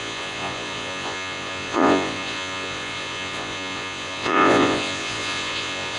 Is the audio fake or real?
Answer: fake